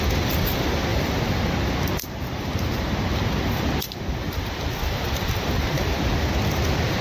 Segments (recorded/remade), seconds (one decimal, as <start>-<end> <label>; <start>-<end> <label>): 0.0-7.0 recorded